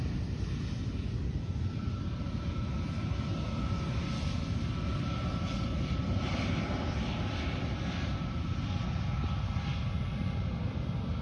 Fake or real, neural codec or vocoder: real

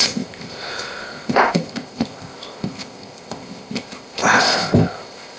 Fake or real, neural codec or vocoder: fake, codec, ZipCodec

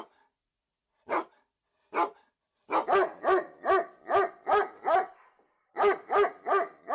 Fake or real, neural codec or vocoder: real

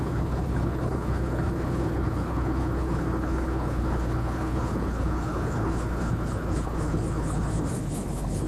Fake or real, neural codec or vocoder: fake, codec, HILCodec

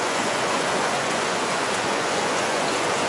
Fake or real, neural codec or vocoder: fake, vocoder, Vocos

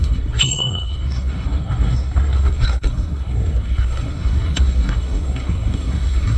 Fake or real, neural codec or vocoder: fake, codec, SNAC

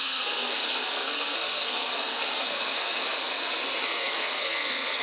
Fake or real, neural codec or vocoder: fake, codec, SNAC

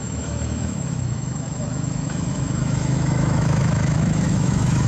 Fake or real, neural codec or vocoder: fake, autoencoder, DAC-VAE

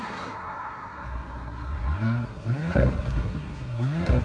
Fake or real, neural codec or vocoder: fake, codec, SNAC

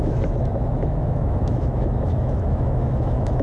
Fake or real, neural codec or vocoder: fake, autoencoder, DAC-VAE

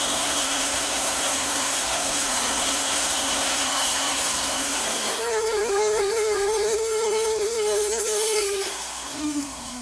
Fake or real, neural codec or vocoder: fake, codec, SNAC